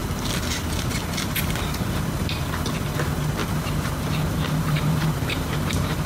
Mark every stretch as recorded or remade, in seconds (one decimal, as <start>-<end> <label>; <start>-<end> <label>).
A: 0.0-3.4 recorded; 3.4-6.1 remade